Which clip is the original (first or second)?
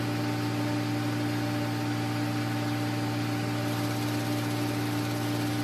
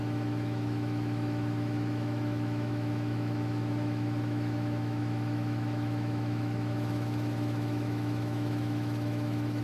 first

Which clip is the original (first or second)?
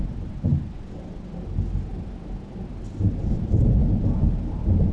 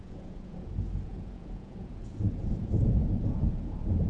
first